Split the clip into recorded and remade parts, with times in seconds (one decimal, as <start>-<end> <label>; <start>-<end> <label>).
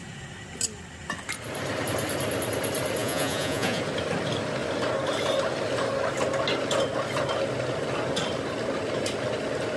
0.0-3.0 recorded; 3.0-3.8 remade; 3.8-9.8 recorded